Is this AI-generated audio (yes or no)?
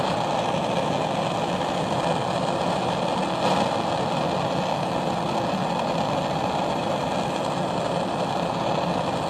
no